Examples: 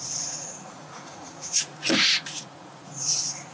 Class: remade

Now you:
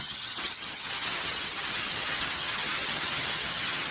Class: remade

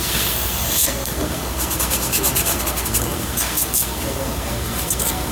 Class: remade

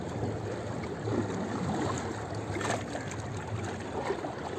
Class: recorded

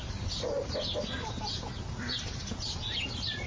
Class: recorded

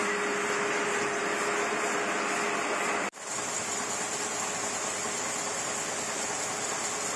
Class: recorded